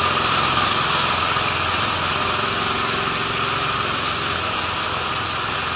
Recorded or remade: recorded